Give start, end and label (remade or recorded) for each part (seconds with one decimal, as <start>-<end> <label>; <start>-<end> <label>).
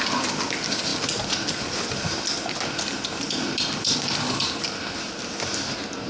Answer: 0.0-6.1 recorded